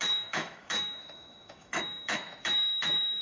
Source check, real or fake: fake